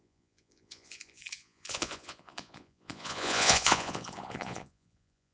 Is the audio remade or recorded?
remade